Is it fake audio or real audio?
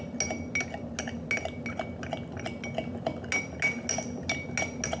real